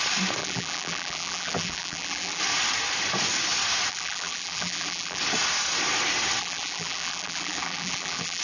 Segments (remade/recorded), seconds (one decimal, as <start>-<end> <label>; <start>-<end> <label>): 0.0-0.4 recorded; 0.4-2.4 remade; 2.4-3.9 recorded; 3.9-5.2 remade; 5.2-6.4 recorded; 6.4-8.4 remade